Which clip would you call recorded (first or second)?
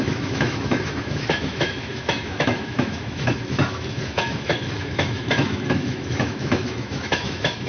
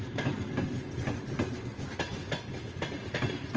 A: second